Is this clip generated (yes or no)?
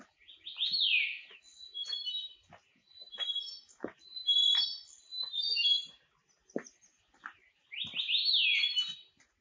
no